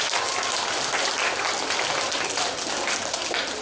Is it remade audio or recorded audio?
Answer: recorded